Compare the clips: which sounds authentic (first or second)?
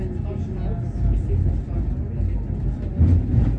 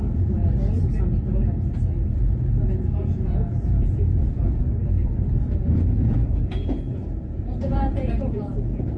first